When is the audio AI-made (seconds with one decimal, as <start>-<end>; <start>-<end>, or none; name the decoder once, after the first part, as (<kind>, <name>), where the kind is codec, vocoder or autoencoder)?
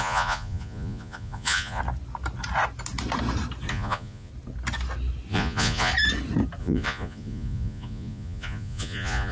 0.0-1.8 (vocoder, Vocos); 3.7-4.3; 5.3-5.9; 6.6-9.3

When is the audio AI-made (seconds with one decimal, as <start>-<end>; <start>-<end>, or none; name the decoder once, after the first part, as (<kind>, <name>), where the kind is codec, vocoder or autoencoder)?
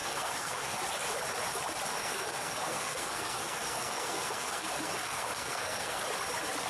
0.0-0.8 (codec, SNAC); 2.0-6.0